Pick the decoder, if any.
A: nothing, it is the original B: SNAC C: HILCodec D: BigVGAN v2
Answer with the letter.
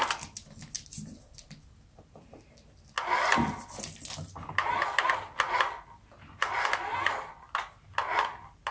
A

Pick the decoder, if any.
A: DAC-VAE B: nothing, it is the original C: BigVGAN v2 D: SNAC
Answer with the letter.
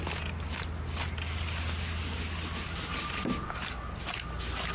B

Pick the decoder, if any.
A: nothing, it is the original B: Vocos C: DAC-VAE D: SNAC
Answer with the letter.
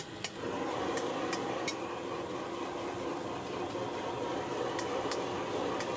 A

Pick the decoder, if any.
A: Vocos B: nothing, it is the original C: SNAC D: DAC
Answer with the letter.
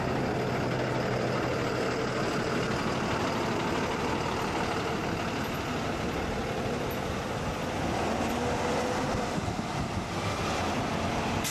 B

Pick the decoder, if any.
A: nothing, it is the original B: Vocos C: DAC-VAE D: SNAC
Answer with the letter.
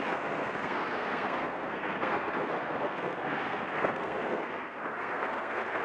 D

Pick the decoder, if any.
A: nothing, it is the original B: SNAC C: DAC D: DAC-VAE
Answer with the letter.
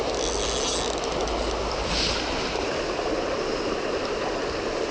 A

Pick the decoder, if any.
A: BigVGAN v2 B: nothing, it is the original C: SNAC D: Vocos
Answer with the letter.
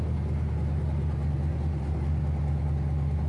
B